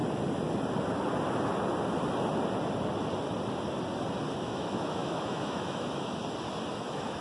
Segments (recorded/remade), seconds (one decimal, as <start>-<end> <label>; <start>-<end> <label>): 0.0-4.3 recorded; 4.3-6.2 remade; 6.2-6.7 recorded; 6.7-7.2 remade

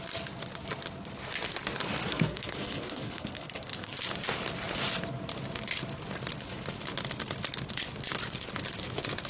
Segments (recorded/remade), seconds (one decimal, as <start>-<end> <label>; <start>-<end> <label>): 0.0-2.1 recorded; 2.1-4.0 remade; 4.0-9.3 recorded

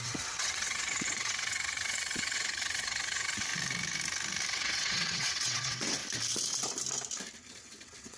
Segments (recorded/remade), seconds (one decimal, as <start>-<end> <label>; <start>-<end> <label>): 0.0-3.5 remade; 3.5-4.5 recorded; 4.5-6.0 remade; 6.0-7.5 recorded; 7.5-8.2 remade

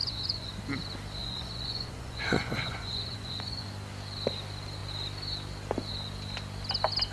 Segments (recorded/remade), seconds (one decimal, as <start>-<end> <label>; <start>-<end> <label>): 0.0-0.5 remade; 0.5-1.2 recorded; 1.2-3.7 remade; 3.7-7.1 recorded

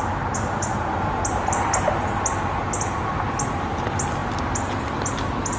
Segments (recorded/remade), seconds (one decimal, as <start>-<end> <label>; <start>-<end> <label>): 0.0-5.6 recorded

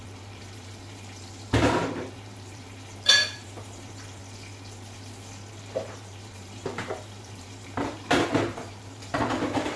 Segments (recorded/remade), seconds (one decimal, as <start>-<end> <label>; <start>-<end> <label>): 0.0-4.2 remade; 4.2-5.5 recorded; 5.5-9.8 remade

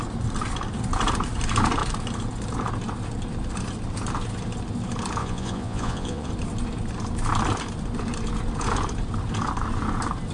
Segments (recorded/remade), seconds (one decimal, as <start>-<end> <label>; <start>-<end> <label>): 0.0-5.2 recorded; 5.2-6.3 remade; 6.3-10.3 recorded